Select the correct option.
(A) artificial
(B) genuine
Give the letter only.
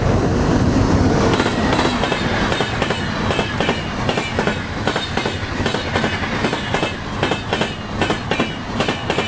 B